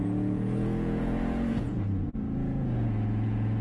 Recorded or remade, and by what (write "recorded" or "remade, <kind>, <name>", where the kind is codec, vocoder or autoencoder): remade, vocoder, Vocos